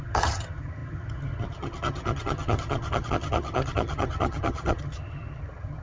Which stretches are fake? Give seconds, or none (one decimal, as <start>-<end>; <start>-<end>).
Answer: 0.0-5.8